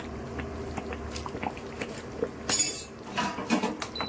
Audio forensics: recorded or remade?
recorded